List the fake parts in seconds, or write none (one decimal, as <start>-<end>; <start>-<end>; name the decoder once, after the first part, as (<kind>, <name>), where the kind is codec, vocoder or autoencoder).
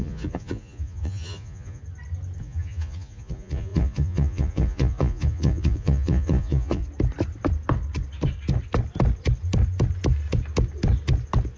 0.0-1.8 (vocoder, Vocos); 2.4-6.8